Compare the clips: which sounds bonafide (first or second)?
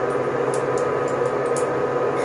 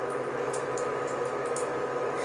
first